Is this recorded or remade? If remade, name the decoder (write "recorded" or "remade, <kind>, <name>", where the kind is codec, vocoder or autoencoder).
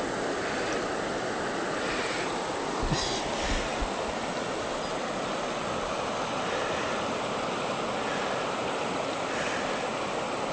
recorded